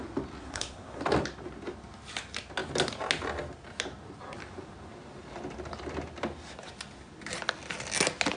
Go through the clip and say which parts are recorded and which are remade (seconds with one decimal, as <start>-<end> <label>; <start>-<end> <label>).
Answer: 0.0-0.4 recorded; 0.4-1.0 remade; 1.0-8.4 recorded